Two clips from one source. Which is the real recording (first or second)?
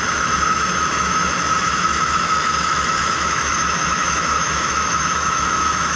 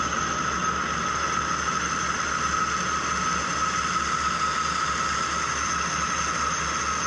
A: second